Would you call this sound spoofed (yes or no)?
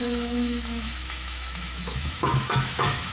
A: yes